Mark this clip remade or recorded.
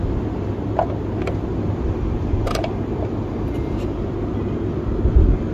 recorded